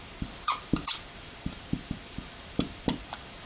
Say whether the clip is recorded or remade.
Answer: remade